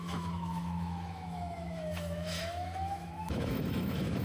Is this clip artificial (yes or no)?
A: yes